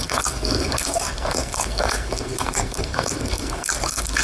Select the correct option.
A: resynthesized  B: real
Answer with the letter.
A